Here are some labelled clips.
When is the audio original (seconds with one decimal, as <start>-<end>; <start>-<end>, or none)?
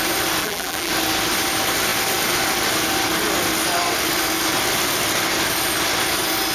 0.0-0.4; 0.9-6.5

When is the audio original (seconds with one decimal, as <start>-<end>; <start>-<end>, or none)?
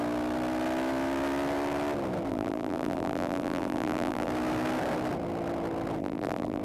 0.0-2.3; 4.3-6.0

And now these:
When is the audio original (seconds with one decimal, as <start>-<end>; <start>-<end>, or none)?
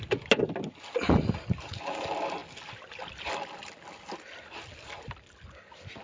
0.0-6.0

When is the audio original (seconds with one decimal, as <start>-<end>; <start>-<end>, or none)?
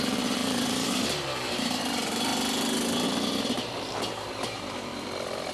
2.3-3.4; 4.9-5.5